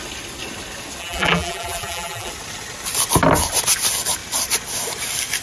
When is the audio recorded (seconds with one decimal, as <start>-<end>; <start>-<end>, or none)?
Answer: 0.0-1.0; 2.3-5.4